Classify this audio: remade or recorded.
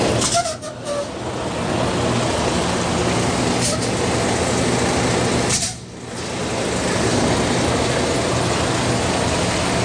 recorded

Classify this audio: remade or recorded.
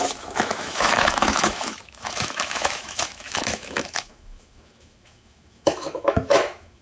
remade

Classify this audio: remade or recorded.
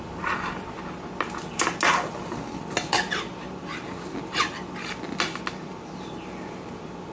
recorded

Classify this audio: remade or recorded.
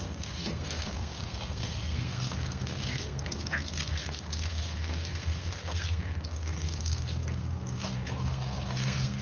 remade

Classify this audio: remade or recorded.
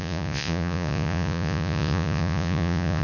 remade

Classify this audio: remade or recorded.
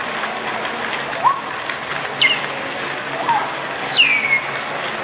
recorded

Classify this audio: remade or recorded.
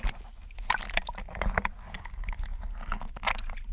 recorded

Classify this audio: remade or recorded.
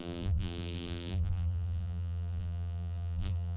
remade